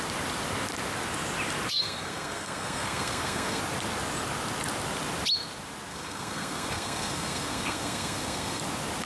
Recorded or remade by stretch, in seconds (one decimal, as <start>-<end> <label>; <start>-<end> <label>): 0.0-1.7 recorded; 1.7-3.6 remade; 3.6-5.9 recorded; 5.9-8.6 remade; 8.6-9.0 recorded